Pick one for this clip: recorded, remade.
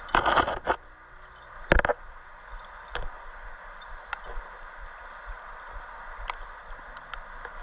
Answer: recorded